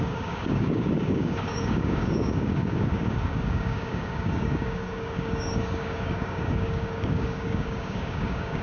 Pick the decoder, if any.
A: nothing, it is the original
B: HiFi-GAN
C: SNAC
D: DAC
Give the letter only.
D